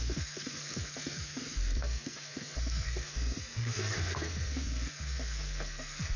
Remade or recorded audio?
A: remade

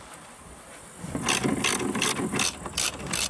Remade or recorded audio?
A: recorded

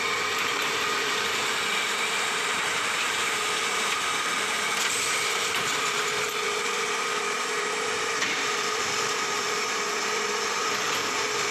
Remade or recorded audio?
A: remade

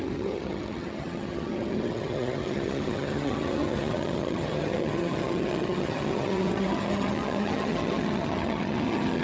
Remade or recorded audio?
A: remade